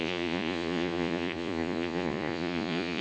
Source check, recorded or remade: remade